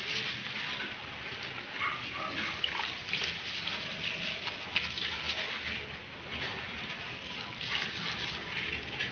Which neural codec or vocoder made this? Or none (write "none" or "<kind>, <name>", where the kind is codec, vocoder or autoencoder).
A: none